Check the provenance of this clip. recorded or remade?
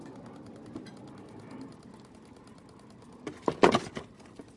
recorded